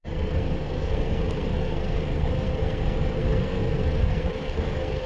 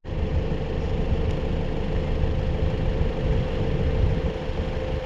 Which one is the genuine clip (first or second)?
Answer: second